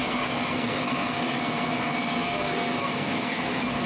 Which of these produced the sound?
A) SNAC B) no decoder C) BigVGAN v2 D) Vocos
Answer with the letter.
A